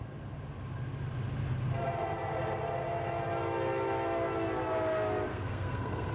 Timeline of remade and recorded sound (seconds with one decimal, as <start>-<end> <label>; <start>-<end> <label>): 0.0-5.3 recorded; 5.3-6.1 remade